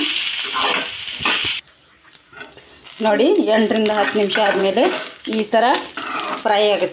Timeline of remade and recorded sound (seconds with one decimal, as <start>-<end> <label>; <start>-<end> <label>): 0.0-4.6 recorded; 4.6-5.9 remade; 5.9-6.9 recorded